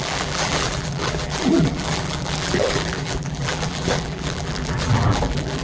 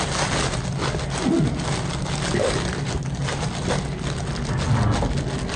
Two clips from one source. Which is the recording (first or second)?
second